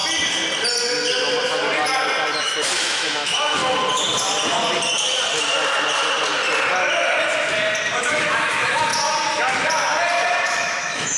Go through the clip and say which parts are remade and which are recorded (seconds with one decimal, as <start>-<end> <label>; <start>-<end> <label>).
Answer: 0.0-2.4 recorded; 2.4-3.6 remade; 3.6-7.9 recorded; 7.9-8.9 remade; 8.9-10.5 recorded; 10.5-11.2 remade